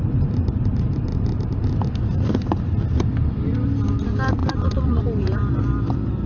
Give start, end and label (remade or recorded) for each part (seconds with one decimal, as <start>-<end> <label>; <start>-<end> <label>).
0.0-4.4 recorded; 4.4-5.0 remade; 5.0-6.3 recorded